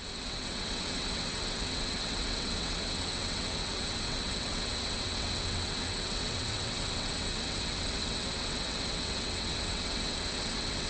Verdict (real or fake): fake